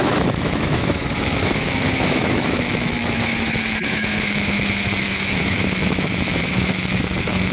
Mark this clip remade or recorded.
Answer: remade